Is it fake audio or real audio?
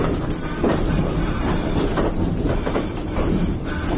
fake